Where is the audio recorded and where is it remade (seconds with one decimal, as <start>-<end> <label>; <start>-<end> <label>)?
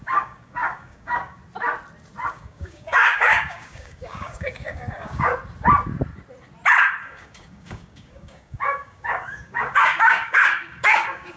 0.0-1.4 remade; 1.4-2.3 recorded; 2.3-5.3 remade; 5.3-7.0 recorded; 7.0-11.4 remade